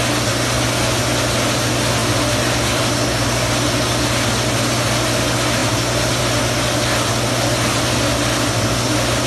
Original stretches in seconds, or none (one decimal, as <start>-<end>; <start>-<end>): 0.0-9.3